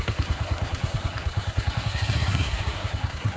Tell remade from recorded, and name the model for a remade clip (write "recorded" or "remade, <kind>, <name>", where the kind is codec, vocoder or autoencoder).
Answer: remade, codec, SNAC